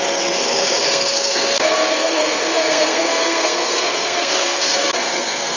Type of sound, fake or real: fake